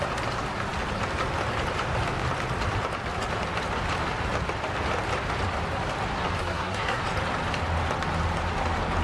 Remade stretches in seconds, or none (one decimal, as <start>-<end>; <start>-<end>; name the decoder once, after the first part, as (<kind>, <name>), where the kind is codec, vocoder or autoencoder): 6.4-7.0 (codec, SNAC)